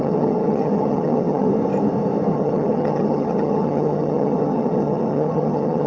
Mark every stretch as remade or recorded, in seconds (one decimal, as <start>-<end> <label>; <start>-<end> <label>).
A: 0.0-1.5 remade; 1.5-2.3 recorded; 2.3-5.9 remade